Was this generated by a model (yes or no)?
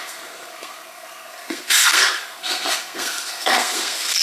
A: yes